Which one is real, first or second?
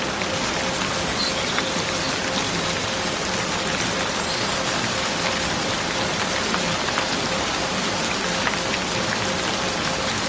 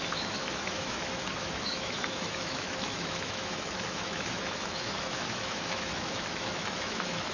first